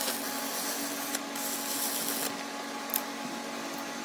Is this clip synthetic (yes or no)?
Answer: no